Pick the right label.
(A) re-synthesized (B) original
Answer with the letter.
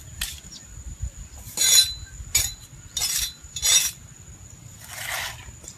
B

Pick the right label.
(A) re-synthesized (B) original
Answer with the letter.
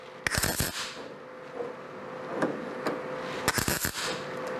B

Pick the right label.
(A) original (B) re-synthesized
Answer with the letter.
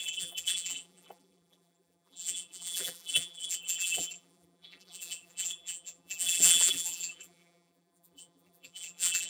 B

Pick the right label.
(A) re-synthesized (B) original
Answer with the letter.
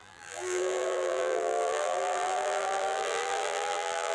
A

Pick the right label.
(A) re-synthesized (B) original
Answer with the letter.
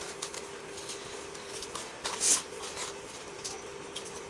B